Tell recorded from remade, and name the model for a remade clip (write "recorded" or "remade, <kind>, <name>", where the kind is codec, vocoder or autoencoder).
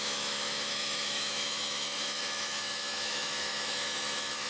remade, autoencoder, DAC-VAE